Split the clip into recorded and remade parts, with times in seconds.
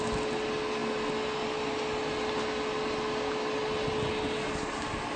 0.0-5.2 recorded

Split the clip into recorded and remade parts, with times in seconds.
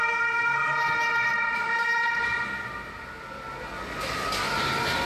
0.0-1.3 recorded; 1.3-2.4 remade; 2.4-5.0 recorded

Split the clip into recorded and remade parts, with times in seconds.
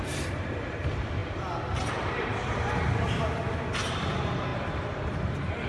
0.0-4.5 remade; 4.5-5.7 recorded